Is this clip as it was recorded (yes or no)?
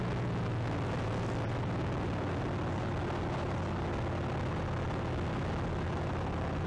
yes